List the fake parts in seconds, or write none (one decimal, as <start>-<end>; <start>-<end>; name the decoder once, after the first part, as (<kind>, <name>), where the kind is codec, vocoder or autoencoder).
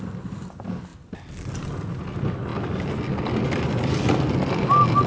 none